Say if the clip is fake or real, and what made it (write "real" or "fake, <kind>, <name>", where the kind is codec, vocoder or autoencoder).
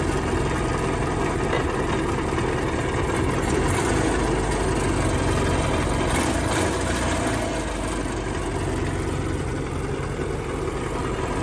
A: real